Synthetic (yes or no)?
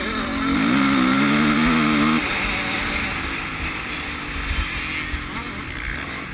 no